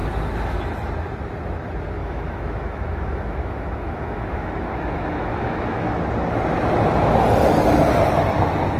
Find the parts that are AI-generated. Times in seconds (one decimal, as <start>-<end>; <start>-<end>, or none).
2.0-6.0